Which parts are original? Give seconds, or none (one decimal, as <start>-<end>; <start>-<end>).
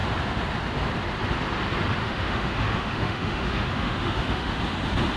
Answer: 0.0-2.0; 4.6-5.2